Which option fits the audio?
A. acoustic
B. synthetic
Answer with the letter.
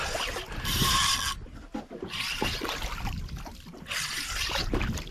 A